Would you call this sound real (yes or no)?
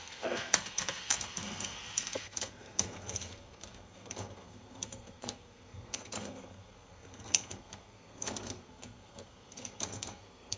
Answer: no